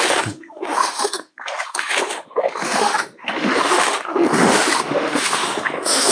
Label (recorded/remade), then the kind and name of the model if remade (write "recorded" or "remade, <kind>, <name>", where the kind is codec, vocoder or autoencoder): remade, autoencoder, DAC-VAE